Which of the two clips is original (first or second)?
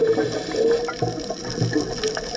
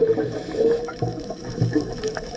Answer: first